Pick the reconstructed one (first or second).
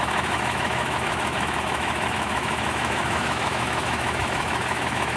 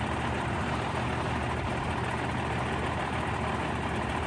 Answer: first